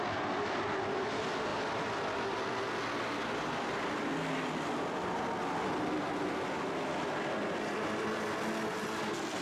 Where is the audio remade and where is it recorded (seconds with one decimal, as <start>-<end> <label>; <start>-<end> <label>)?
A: 0.0-9.4 recorded